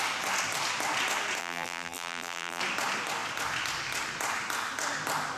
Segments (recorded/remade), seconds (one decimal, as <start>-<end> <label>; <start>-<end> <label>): 0.0-1.4 recorded; 1.4-2.6 remade; 2.6-5.4 recorded